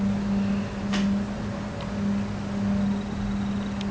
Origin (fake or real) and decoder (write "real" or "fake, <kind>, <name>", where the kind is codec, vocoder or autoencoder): real